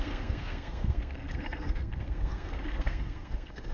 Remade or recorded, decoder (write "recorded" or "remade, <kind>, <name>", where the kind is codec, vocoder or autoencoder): remade, codec, SNAC